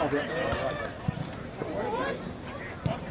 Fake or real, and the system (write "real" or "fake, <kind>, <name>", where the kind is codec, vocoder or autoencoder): real